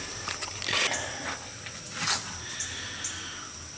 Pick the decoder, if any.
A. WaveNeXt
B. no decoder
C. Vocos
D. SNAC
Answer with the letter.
B